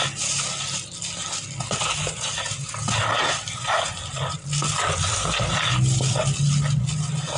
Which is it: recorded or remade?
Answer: recorded